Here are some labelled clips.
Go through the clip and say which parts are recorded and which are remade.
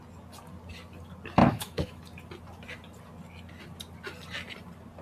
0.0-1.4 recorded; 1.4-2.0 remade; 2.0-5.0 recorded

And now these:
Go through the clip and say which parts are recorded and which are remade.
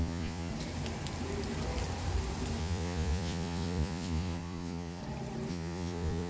0.0-0.5 remade; 0.5-2.6 recorded; 2.6-5.0 remade; 5.0-5.5 recorded; 5.5-6.3 remade